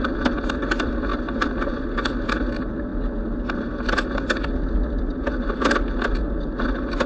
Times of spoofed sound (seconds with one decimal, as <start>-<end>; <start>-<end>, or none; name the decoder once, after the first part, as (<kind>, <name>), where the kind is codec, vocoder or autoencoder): none